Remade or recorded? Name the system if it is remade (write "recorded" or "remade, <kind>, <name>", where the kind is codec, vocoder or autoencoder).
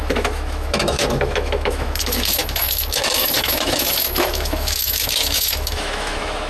remade, autoencoder, DAC-VAE